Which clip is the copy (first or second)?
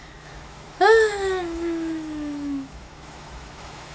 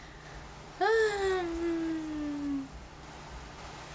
first